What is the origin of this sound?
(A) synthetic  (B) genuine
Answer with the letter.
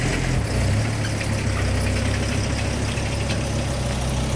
B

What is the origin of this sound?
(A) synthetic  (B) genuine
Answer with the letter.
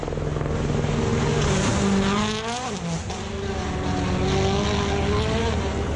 B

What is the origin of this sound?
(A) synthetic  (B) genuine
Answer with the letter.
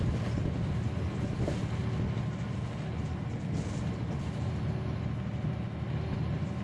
B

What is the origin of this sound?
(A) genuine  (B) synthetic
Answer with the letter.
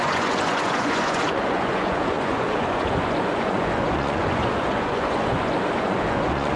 B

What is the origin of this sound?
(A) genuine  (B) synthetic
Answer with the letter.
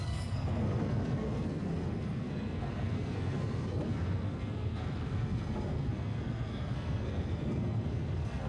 B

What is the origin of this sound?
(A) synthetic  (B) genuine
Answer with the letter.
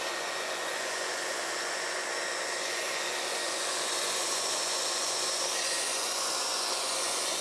A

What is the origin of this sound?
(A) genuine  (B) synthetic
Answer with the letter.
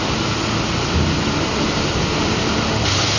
A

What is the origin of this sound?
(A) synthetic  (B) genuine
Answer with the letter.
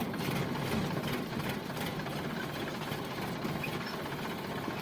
B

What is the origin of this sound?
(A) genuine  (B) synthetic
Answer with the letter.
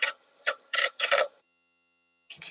B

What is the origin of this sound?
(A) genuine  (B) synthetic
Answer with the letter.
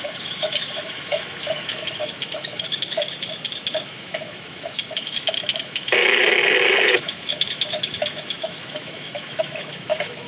B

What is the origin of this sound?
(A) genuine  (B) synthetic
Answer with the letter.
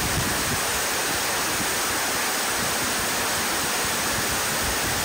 A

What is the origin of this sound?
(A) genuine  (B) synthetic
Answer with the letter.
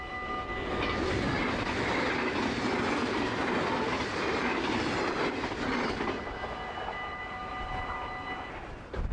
A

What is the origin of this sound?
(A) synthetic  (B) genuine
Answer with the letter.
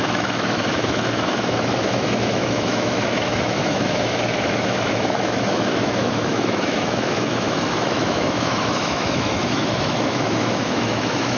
A